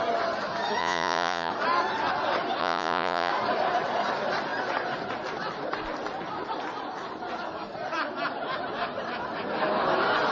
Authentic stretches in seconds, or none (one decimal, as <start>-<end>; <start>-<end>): 0.0-0.8; 1.5-2.6; 3.3-10.3